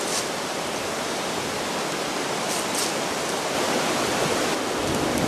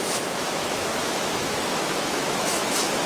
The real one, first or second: first